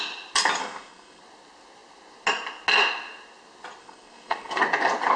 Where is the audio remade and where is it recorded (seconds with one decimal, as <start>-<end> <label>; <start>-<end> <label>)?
0.0-0.6 recorded; 0.6-1.2 remade; 1.2-3.8 recorded; 3.8-4.6 remade; 4.6-5.2 recorded